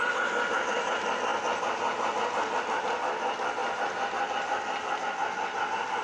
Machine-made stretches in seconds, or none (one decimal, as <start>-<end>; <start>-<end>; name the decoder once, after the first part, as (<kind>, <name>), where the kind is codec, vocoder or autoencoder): 0.0-1.3 (vocoder, BigVGAN v2); 2.6-6.0